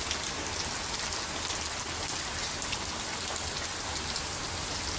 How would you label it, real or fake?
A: real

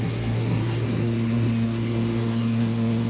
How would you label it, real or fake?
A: fake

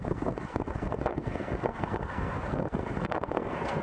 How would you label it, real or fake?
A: fake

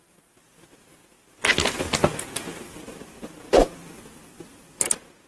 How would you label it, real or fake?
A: real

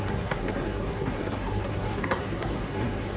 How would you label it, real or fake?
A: fake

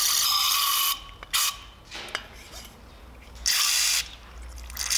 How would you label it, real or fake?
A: real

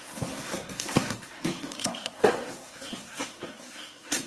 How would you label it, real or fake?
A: fake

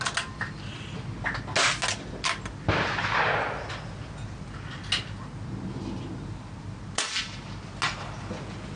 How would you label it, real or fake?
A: real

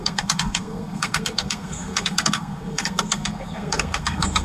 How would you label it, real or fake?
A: fake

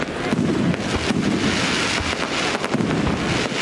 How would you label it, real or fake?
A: real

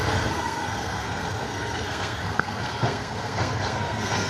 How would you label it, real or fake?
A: fake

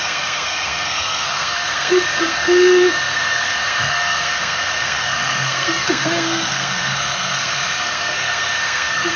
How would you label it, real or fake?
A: fake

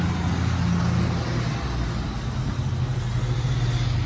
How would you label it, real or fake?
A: real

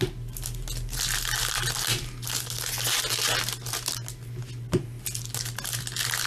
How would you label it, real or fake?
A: real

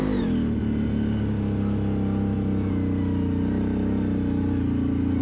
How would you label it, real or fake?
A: real